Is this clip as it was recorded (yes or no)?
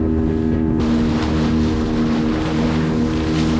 yes